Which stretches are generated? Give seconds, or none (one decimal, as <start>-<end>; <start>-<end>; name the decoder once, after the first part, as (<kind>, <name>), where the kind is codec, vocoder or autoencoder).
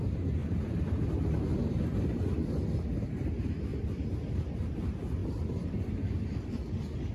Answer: 0.4-1.1 (vocoder, BigVGAN v2); 5.2-6.5